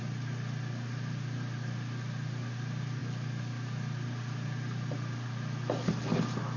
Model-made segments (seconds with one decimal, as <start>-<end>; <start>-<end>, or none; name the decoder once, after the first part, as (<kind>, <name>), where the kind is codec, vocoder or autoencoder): none